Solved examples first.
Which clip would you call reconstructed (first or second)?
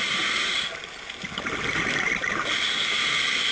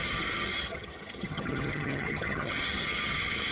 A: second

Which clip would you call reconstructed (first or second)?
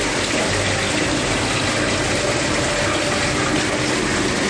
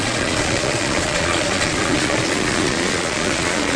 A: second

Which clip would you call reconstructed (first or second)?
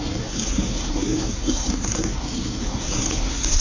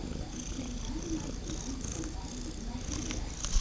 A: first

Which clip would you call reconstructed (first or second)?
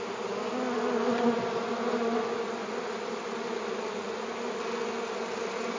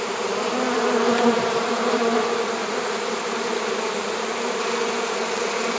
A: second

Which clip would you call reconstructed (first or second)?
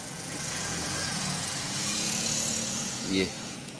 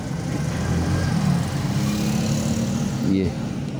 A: first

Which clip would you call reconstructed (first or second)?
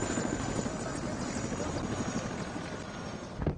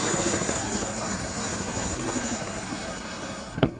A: second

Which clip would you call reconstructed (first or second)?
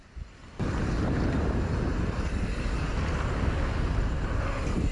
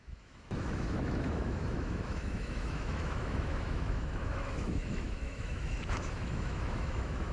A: second